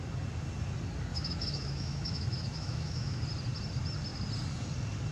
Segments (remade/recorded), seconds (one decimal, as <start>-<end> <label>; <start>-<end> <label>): 0.0-1.1 recorded; 1.1-3.2 remade; 3.2-5.1 recorded

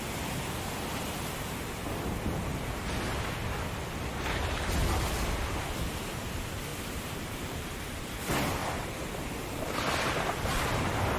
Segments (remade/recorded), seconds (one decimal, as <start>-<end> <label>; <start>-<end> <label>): 0.0-6.7 recorded; 6.7-7.8 remade; 7.8-11.2 recorded

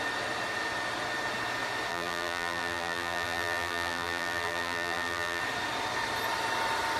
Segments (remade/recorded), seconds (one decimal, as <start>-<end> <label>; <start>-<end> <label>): 0.0-1.9 recorded; 1.9-5.4 remade; 5.4-7.0 recorded

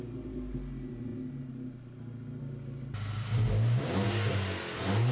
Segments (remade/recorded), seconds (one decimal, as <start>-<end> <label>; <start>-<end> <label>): 0.0-5.1 recorded

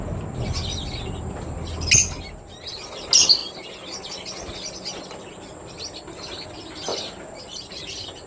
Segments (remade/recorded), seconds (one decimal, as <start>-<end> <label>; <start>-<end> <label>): 0.0-6.9 recorded; 6.9-7.8 remade; 7.8-8.3 recorded

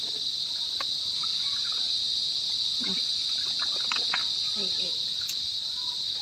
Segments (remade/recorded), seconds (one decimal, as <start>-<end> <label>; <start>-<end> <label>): 0.0-6.2 recorded